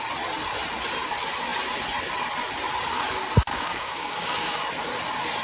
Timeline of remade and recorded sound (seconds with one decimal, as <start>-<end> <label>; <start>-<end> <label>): 0.0-3.5 recorded; 3.5-4.6 remade; 4.6-5.4 recorded